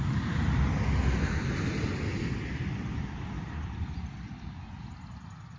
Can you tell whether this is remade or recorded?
remade